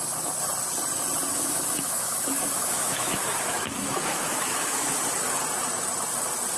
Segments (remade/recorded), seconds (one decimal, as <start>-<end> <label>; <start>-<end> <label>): 0.0-1.3 recorded; 1.3-5.0 remade; 5.0-6.6 recorded